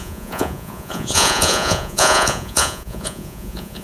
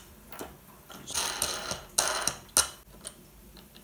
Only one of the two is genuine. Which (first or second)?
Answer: second